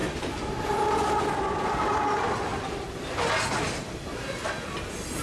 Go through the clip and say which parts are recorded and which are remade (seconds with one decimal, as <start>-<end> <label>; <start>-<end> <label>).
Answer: 0.0-5.2 recorded